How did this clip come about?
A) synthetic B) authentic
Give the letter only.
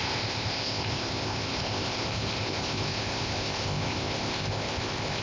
A